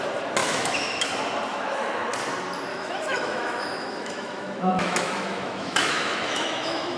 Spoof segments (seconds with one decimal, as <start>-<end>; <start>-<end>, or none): 0.4-1.1; 1.5-2.1; 2.7-7.0